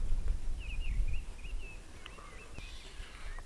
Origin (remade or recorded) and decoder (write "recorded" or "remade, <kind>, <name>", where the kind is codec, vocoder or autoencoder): remade, vocoder, BigVGAN v2